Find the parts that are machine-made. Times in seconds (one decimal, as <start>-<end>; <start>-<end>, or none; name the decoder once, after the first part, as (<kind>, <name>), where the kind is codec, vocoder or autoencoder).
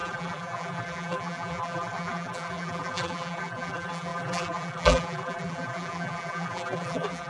0.0-7.3 (vocoder, BigVGAN v2)